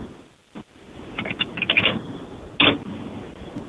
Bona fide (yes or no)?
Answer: yes